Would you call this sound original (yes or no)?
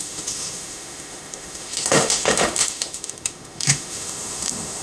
no